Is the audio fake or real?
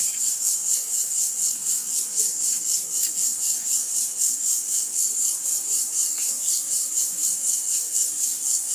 fake